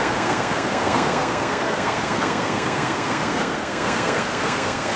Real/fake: fake